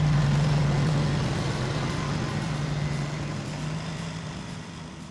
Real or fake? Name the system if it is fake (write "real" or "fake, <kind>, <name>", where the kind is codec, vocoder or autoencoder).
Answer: real